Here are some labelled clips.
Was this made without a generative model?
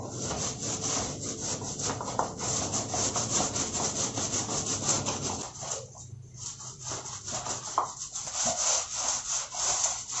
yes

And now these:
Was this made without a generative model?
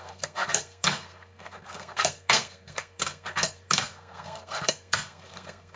no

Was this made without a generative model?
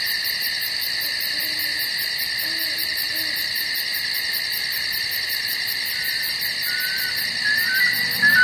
yes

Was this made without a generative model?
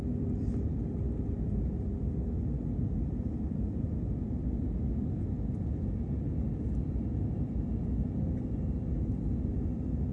yes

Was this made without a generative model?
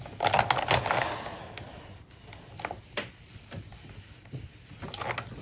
yes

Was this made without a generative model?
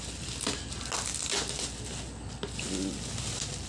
yes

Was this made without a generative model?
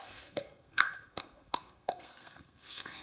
no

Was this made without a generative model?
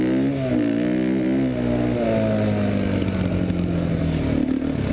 yes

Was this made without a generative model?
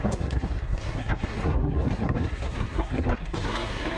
no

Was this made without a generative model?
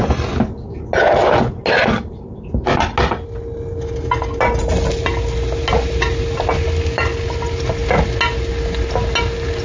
yes